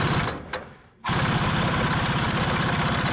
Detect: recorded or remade recorded